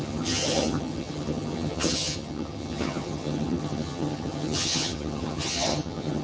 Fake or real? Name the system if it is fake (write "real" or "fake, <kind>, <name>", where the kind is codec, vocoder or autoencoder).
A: fake, vocoder, HiFi-GAN